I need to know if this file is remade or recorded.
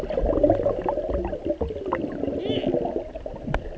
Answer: recorded